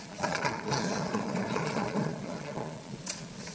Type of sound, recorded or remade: remade